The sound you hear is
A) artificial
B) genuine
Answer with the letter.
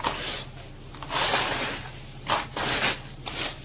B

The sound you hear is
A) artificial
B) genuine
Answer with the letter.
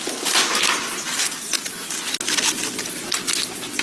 B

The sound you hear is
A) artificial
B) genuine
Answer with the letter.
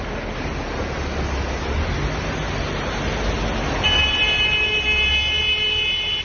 B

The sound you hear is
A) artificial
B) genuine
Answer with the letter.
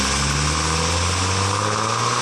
B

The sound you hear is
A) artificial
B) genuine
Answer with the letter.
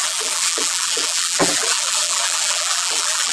A